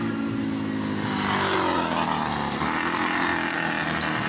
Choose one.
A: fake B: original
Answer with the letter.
B